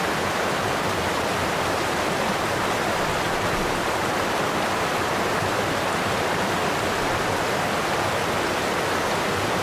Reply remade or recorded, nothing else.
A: recorded